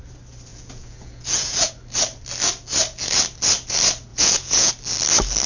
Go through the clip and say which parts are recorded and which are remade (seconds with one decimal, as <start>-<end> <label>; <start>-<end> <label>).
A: 0.0-0.5 recorded; 0.5-1.7 remade; 1.7-4.1 recorded; 4.1-4.7 remade; 4.7-5.5 recorded